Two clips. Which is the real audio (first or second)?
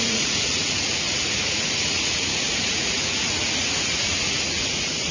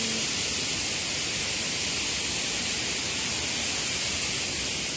second